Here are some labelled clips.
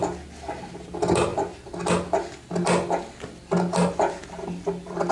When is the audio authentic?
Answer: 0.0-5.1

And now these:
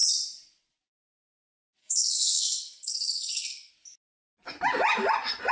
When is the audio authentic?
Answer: 0.0-1.8; 3.7-5.5

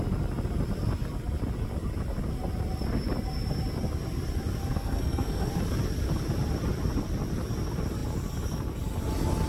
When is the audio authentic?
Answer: 0.0-4.7; 5.5-9.5